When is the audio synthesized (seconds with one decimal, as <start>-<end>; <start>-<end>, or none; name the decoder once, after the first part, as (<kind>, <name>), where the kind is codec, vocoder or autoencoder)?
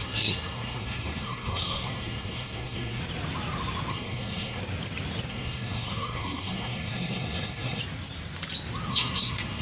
0.0-3.0 (codec, SNAC); 3.9-4.6; 5.3-7.8; 8.9-9.6